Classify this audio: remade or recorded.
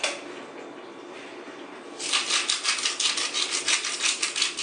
recorded